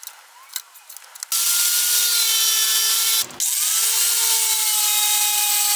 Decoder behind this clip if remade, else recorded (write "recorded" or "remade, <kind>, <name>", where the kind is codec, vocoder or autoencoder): recorded